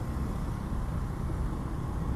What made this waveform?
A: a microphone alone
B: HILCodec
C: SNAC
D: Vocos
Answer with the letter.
A